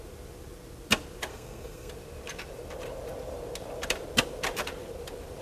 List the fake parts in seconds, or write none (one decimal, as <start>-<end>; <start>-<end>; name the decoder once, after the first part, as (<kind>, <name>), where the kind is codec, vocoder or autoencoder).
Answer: 1.3-1.9 (codec, SNAC)